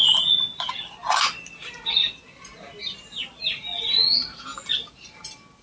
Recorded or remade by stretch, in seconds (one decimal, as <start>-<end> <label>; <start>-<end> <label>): 0.0-5.6 recorded